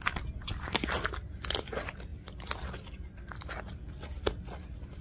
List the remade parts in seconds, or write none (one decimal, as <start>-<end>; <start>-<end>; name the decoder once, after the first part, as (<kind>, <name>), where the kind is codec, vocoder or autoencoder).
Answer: none